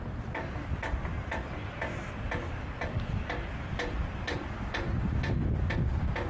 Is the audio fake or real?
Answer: real